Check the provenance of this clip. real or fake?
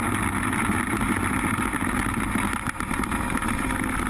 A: real